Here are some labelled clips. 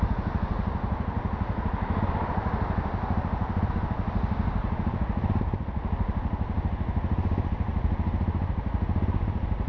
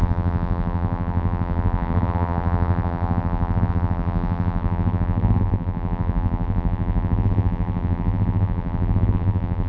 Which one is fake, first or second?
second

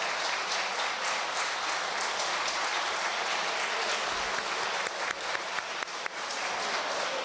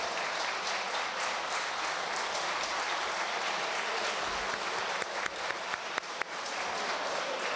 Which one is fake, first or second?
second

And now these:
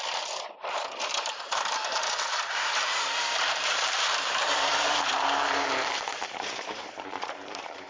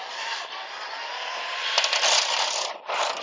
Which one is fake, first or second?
first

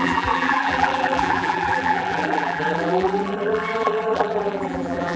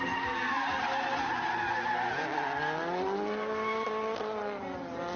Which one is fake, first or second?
first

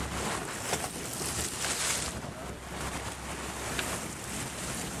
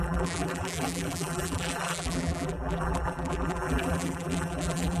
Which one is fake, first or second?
second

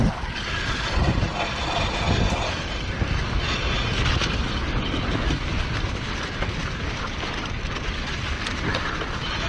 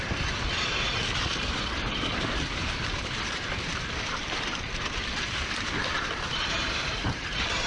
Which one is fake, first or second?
second